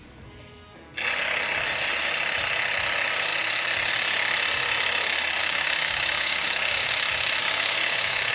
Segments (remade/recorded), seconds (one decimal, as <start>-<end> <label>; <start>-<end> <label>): 0.0-5.4 recorded; 5.4-6.9 remade; 6.9-7.4 recorded; 7.4-8.3 remade